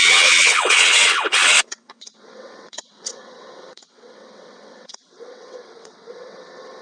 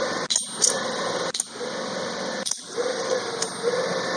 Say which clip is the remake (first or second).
first